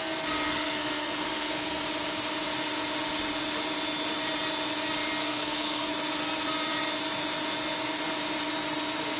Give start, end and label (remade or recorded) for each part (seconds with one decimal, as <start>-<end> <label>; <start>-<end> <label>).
0.0-0.5 recorded; 0.5-1.8 remade; 1.8-5.2 recorded; 5.2-5.9 remade; 5.9-9.2 recorded